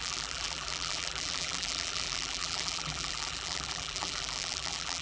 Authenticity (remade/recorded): remade